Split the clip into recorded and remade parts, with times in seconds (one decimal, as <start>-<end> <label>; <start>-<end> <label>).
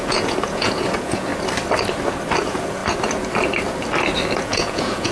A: 0.0-1.3 remade; 1.3-2.4 recorded; 2.4-2.8 remade; 2.8-4.4 recorded; 4.4-5.1 remade